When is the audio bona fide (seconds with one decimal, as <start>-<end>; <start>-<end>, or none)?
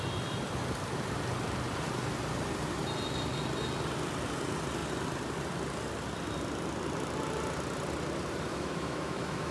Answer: 0.0-8.5